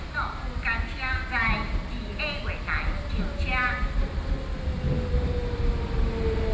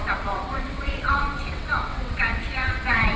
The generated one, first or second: second